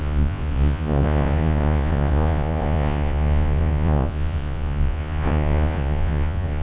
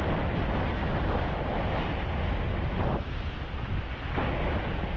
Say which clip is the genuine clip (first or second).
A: second